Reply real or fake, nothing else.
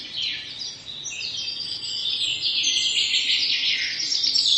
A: real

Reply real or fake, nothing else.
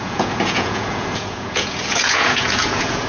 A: fake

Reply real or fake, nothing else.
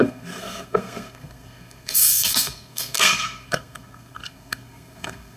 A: fake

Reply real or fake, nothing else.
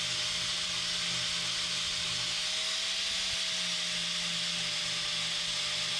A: real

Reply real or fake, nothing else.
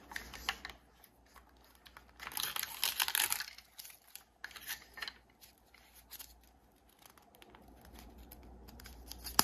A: real